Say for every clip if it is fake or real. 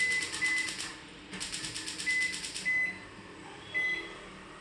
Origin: real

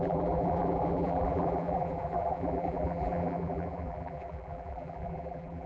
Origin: fake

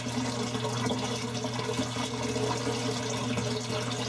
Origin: real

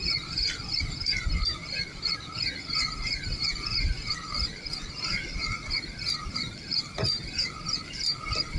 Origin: real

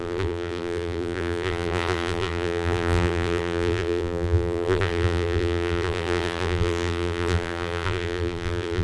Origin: fake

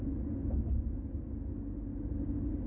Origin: real